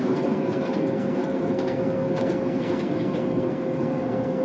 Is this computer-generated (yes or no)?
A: yes